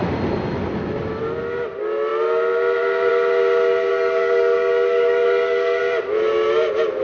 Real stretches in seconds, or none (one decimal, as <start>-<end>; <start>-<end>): 0.0-3.9; 5.8-7.0